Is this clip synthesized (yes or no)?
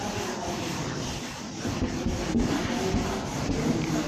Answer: no